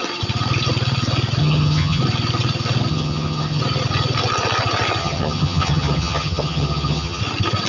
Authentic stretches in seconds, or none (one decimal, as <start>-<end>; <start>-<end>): 0.0-1.4; 2.0-2.9; 3.6-5.0; 7.2-7.7